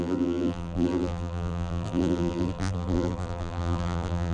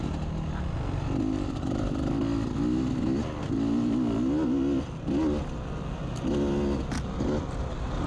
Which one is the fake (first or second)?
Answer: first